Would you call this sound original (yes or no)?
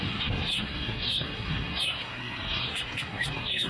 no